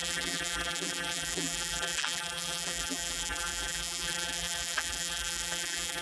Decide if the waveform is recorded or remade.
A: remade